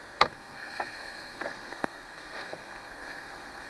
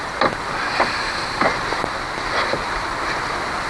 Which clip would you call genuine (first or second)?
second